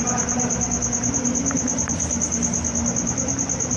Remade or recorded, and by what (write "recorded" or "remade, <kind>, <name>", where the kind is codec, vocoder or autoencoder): recorded